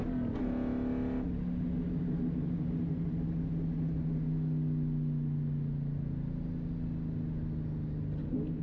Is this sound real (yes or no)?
yes